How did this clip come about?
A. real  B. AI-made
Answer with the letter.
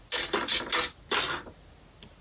A